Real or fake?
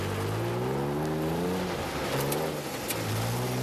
real